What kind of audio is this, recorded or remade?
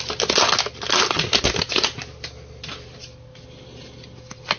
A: recorded